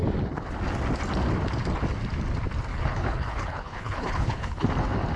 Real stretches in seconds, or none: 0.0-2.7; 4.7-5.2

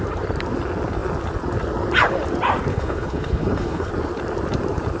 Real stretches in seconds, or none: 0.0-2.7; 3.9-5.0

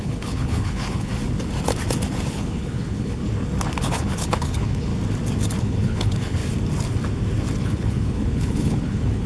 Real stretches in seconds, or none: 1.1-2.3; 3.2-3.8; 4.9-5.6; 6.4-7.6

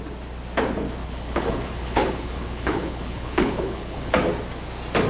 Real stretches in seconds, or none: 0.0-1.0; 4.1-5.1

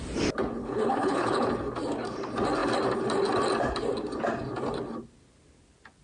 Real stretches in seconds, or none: 0.0-0.6; 1.5-6.0

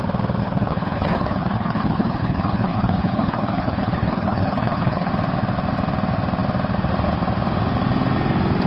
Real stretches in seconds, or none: 0.0-0.4; 5.1-8.7